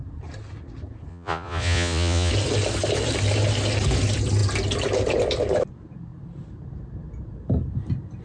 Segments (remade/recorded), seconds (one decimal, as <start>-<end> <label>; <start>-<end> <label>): 0.0-1.1 recorded; 1.1-2.3 remade; 2.3-8.2 recorded

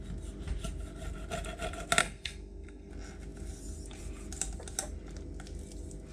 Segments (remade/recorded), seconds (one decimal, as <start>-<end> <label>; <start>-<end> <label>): 0.0-2.0 recorded; 2.0-2.9 remade; 2.9-6.1 recorded

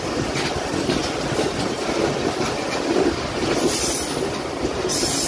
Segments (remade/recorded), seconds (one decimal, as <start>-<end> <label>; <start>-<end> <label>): 0.0-5.3 recorded

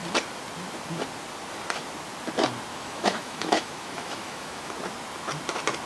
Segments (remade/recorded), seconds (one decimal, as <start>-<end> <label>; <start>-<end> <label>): 0.0-2.7 recorded; 2.7-4.7 remade; 4.7-5.9 recorded

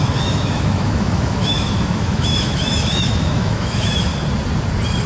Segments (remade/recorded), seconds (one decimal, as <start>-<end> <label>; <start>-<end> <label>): 0.0-4.1 remade; 4.1-5.1 recorded

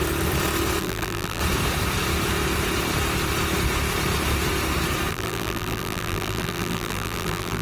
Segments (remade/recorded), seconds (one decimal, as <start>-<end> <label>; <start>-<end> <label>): 0.0-0.8 recorded; 0.8-1.4 remade; 1.4-5.1 recorded; 5.1-7.6 remade

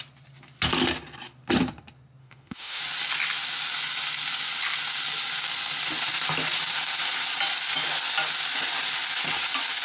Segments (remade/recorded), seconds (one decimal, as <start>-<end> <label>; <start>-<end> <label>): 0.0-2.2 recorded; 2.2-2.8 remade; 2.8-9.8 recorded

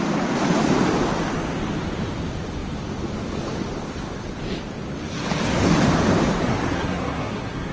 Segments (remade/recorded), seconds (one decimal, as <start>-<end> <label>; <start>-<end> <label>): 0.0-6.5 recorded; 6.5-7.7 remade